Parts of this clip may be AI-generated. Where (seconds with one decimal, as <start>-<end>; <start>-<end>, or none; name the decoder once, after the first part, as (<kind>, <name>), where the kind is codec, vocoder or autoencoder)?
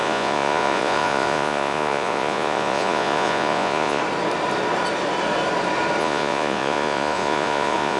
0.0-4.0 (vocoder, Vocos); 6.0-8.0